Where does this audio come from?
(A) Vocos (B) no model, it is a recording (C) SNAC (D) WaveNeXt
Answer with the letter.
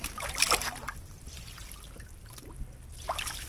B